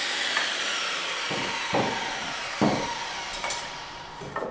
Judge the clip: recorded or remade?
remade